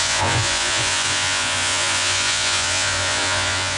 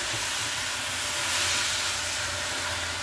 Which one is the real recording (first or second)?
second